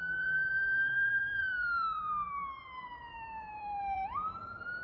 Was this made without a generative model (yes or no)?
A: no